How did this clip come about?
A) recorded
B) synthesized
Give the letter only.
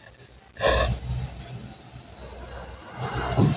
A